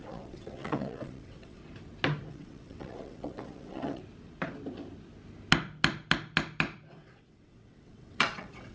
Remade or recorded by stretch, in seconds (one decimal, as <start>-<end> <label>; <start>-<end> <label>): 0.0-1.6 remade; 1.6-2.3 recorded; 2.3-4.0 remade; 4.0-6.9 recorded; 6.9-8.7 remade

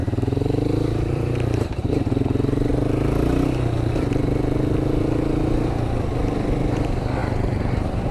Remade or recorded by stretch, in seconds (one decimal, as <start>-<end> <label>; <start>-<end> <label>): 0.0-1.9 remade; 1.9-7.2 recorded; 7.2-8.1 remade